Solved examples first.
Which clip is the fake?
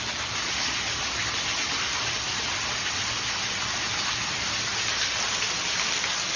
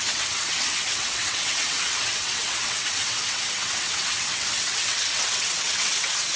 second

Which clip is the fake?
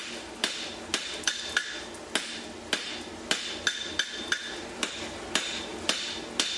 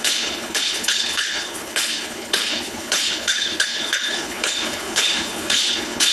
second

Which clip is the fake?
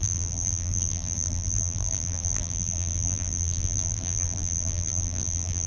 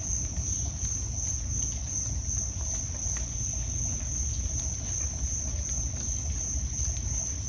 first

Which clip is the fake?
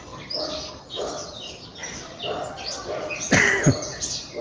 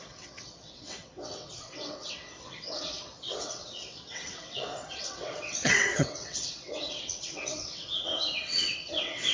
second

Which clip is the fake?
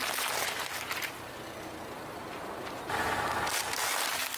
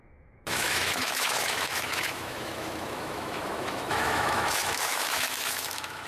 second